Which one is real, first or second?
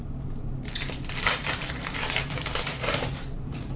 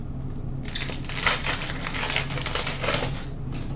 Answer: second